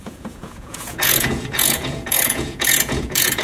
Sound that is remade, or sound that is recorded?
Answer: remade